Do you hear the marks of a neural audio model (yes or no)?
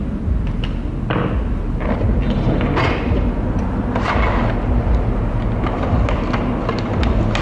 no